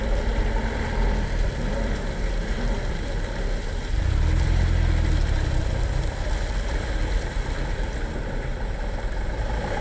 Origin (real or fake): fake